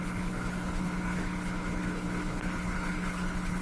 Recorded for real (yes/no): no